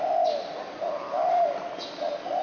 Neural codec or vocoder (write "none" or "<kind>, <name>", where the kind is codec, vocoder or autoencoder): none